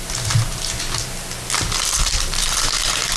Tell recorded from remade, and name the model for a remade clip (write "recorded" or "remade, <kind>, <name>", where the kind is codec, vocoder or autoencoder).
remade, vocoder, BigVGAN v2